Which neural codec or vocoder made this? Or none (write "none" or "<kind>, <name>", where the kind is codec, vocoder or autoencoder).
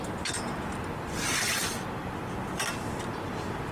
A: none